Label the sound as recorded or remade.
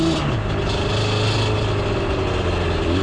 recorded